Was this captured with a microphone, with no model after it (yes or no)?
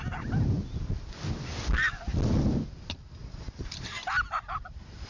yes